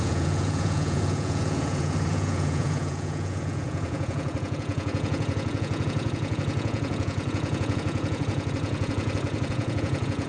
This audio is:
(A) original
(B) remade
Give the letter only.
B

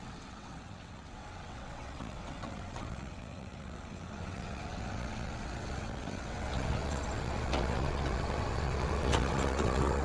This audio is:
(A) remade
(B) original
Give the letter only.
A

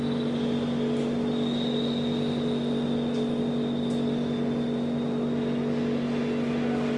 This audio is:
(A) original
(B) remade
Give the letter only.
A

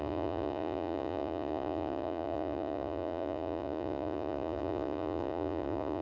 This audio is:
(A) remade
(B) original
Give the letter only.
A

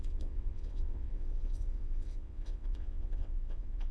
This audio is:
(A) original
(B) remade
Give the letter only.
B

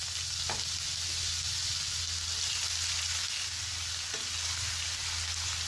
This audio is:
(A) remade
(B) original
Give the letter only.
B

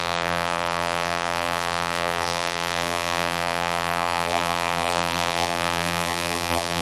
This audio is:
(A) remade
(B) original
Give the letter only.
A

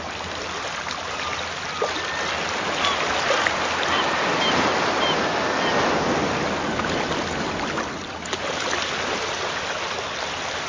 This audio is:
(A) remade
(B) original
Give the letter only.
B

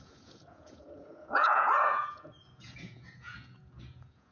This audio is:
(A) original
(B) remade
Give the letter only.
B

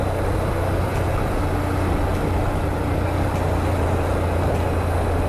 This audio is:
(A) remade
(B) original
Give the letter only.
B